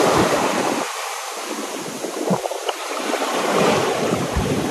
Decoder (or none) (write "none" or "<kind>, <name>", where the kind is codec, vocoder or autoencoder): vocoder, BigVGAN v2